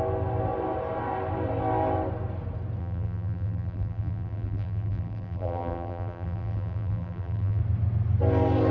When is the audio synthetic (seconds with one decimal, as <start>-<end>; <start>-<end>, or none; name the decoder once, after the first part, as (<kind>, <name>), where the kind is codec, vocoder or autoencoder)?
2.8-7.6 (vocoder, BigVGAN v2)